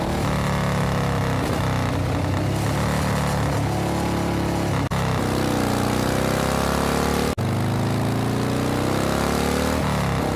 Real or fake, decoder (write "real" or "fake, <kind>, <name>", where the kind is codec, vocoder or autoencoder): real